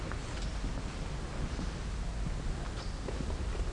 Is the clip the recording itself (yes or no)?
yes